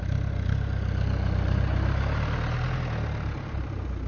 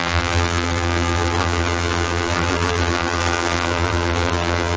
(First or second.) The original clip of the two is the first